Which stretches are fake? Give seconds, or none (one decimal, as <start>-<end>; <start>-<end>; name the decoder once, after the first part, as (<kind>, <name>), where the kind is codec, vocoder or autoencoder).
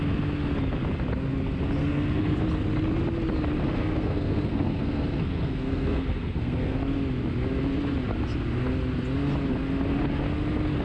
1.8-2.4 (codec, SNAC); 3.6-6.8